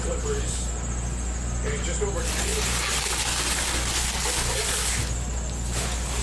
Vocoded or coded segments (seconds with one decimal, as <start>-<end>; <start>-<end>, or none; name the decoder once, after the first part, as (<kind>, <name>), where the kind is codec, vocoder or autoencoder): none